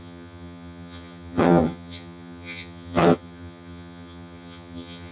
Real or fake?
fake